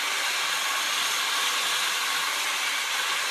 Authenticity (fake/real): real